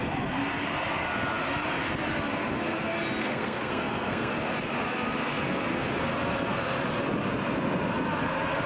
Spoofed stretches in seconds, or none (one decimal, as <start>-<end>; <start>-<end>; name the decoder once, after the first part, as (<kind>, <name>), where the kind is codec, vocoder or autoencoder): 3.2-4.3 (codec, SNAC)